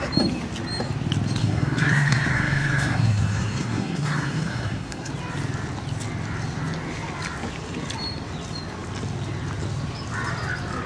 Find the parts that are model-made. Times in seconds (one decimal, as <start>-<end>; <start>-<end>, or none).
1.4-5.1